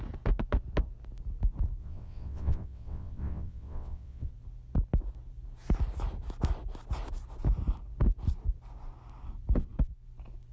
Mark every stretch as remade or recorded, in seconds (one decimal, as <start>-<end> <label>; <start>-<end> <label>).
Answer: 0.0-1.8 recorded; 1.8-4.3 remade; 4.3-10.5 recorded